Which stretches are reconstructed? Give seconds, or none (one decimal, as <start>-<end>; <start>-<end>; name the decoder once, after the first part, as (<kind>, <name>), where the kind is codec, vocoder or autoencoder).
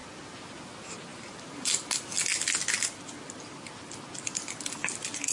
1.1-1.9 (vocoder, BigVGAN v2)